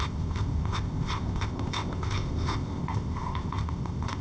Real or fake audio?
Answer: fake